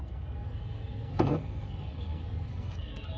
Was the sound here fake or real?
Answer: fake